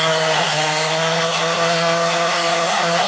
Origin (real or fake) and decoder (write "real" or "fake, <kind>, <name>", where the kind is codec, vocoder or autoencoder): fake, codec, SNAC